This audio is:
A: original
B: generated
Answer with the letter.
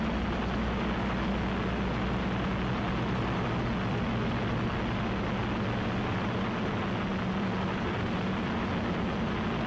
A